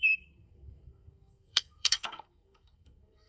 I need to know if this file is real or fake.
fake